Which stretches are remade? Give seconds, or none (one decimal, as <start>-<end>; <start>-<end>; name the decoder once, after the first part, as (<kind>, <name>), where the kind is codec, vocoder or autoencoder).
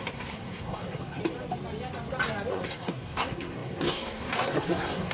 0.0-1.2 (codec, SNAC); 2.5-5.1